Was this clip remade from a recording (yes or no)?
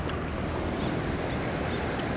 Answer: no